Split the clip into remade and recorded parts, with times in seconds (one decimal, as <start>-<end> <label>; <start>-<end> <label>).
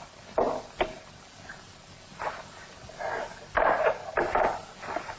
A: 0.0-5.2 recorded